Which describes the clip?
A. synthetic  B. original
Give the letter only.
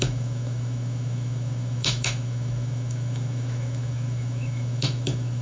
A